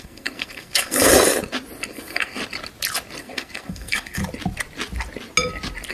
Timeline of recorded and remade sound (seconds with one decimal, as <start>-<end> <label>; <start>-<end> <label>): 0.0-1.1 remade; 1.1-1.9 recorded; 1.9-2.4 remade; 2.4-3.2 recorded; 3.2-4.2 remade; 4.2-5.9 recorded